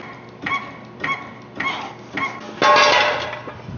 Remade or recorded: recorded